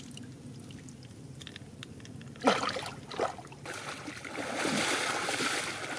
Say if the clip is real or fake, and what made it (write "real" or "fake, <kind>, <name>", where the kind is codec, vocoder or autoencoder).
real